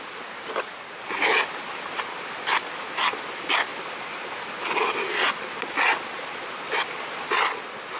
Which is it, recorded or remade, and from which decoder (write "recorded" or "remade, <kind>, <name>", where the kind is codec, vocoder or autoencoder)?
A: recorded